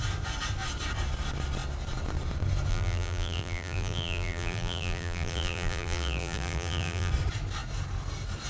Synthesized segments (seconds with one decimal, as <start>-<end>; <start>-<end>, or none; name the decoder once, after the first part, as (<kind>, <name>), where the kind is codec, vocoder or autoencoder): 2.7-7.1 (vocoder, BigVGAN v2)